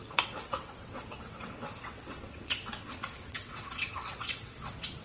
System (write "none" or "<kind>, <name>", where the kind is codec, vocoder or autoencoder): vocoder, WaveNeXt